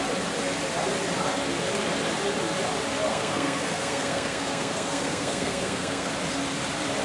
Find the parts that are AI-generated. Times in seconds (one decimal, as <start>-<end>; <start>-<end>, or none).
3.1-6.1